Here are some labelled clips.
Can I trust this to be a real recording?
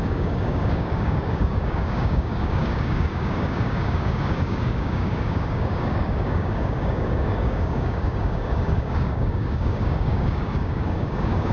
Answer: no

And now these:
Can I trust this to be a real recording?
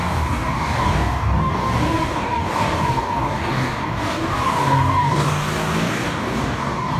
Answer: no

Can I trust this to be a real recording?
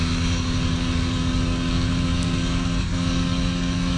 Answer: no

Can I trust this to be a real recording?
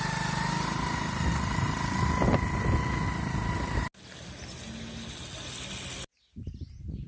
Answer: yes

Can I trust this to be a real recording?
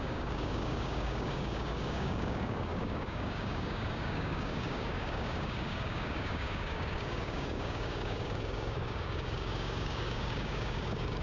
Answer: no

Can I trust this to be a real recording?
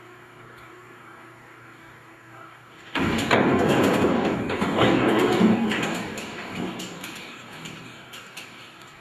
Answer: no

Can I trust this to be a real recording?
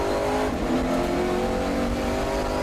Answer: yes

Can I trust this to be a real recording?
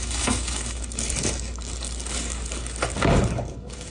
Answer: no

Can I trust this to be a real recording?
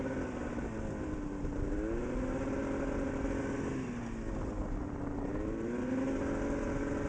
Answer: yes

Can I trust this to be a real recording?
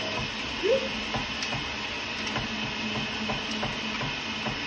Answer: yes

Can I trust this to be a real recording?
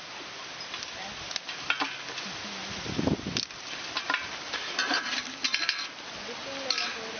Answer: yes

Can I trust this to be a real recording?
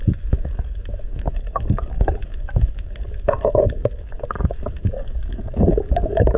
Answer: no